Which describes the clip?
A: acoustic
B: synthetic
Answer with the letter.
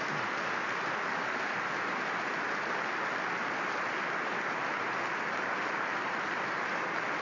A